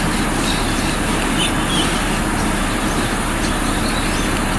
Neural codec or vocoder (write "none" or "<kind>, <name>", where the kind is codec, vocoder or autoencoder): none